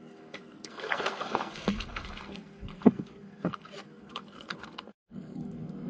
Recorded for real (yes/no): no